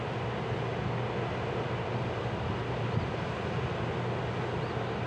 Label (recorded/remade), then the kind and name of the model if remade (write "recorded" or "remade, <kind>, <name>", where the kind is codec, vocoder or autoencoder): recorded